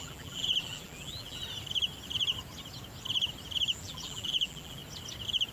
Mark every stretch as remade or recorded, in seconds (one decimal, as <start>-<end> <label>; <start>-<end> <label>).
0.0-1.4 remade; 1.4-3.8 recorded; 3.8-4.8 remade; 4.8-5.5 recorded